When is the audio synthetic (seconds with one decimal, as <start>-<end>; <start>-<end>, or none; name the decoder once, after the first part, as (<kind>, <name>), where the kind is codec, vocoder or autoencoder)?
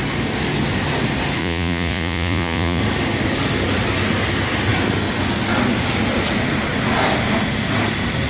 1.4-2.8 (vocoder, Vocos)